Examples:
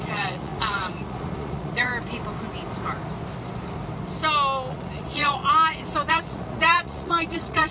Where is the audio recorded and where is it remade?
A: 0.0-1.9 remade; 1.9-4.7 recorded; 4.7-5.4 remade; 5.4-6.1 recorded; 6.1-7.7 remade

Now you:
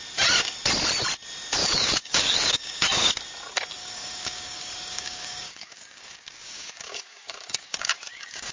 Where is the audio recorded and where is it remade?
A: 0.0-1.6 recorded; 1.6-3.1 remade; 3.1-3.8 recorded; 3.8-8.5 remade

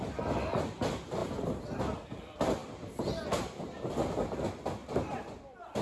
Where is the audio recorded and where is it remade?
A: 0.0-5.8 recorded